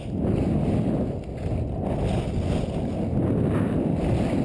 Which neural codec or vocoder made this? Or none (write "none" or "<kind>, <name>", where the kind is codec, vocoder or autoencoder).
none